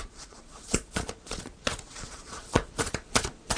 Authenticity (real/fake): fake